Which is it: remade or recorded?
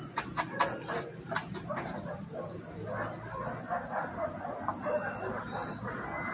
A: recorded